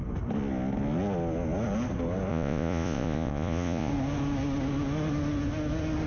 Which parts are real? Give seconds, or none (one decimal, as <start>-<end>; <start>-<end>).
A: 0.0-2.3; 3.9-6.1